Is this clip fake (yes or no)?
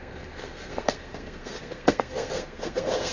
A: yes